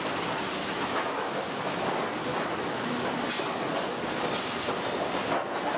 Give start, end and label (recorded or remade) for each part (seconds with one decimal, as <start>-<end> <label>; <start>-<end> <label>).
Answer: 0.0-0.6 recorded; 0.6-1.9 remade; 1.9-2.3 recorded; 2.3-3.1 remade; 3.1-5.8 recorded